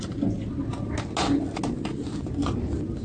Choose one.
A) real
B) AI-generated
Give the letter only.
A